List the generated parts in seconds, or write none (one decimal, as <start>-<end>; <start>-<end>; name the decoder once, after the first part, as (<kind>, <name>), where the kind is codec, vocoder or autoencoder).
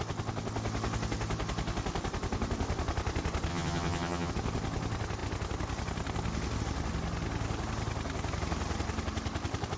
3.5-4.3 (vocoder, HiFi-GAN)